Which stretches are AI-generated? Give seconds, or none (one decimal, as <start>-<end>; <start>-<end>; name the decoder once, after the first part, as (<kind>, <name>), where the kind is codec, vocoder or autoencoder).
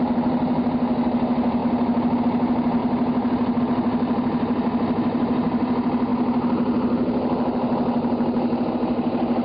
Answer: 1.6-2.2 (vocoder, BigVGAN v2)